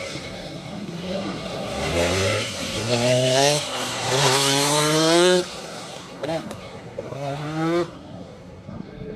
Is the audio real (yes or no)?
no